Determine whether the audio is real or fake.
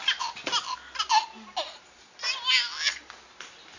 real